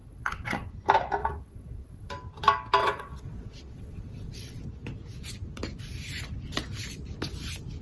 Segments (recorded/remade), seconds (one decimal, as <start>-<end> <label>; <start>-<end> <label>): 0.0-0.7 remade; 0.7-1.2 recorded; 1.2-2.1 remade; 2.1-2.8 recorded; 2.8-4.6 remade; 4.6-7.8 recorded